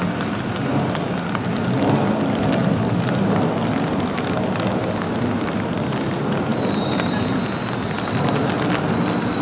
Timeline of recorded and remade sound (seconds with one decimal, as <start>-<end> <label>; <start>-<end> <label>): 0.0-6.5 recorded; 6.5-7.3 remade; 7.3-9.4 recorded